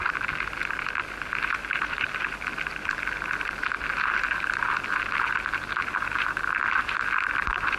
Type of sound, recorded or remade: recorded